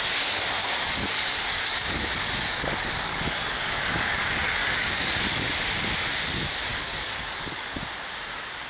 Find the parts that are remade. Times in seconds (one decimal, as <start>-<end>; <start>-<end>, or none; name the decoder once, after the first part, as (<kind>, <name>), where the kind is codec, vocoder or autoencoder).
0.6-5.2 (codec, DAC); 6.7-7.7